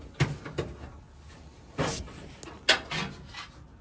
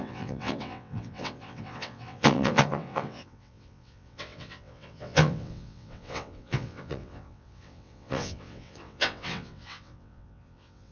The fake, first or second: second